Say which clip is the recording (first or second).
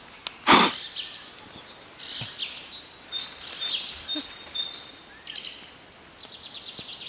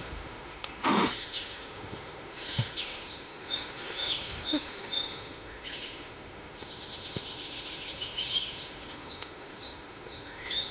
first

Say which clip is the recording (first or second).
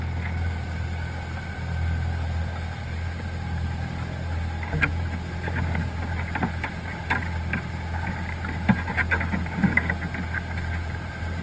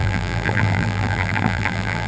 first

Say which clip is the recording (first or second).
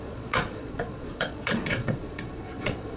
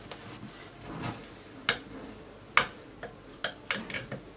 second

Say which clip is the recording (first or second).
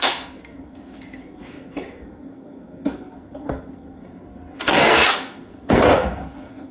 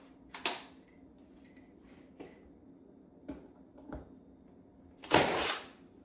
second